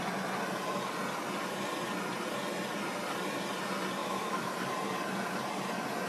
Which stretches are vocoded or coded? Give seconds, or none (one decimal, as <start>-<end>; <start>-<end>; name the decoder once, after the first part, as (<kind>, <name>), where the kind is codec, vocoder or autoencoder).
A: 4.0-4.5 (autoencoder, DAC-VAE)